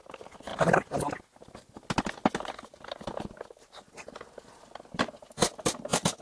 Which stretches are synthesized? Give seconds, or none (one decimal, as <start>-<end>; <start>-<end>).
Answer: none